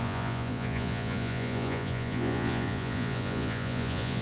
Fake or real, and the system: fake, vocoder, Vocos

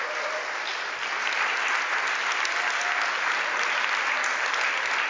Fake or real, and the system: real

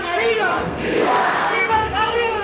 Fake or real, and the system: fake, codec, SNAC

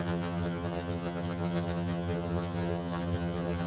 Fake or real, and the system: fake, vocoder, HiFi-GAN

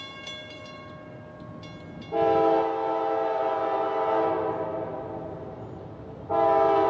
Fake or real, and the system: real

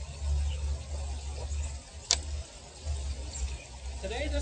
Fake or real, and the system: real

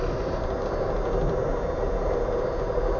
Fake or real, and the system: real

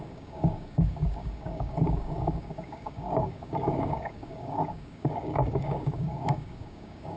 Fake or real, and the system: fake, codec, DAC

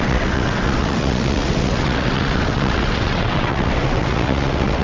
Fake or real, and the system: fake, vocoder, WaveNeXt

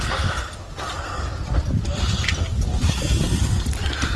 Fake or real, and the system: real